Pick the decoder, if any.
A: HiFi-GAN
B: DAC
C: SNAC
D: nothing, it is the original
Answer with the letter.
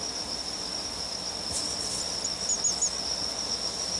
D